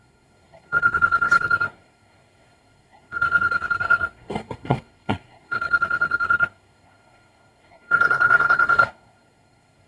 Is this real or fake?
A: fake